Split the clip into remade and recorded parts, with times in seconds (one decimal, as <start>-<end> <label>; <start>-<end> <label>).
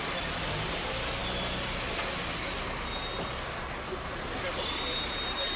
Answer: 0.0-5.6 recorded